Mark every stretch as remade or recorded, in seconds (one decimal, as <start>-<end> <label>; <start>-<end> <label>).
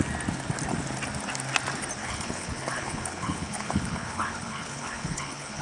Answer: 0.0-2.0 recorded; 2.0-5.6 remade